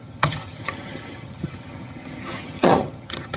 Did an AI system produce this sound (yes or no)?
yes